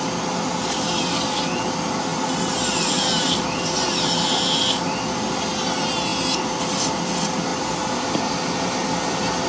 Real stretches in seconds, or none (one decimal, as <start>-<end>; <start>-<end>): 0.0-2.1; 5.4-6.1; 7.0-7.5; 9.1-9.5